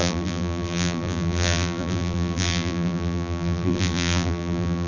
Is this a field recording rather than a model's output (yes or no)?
no